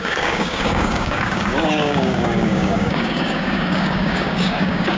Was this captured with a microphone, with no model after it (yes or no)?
no